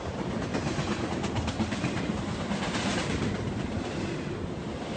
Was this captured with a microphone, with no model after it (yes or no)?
yes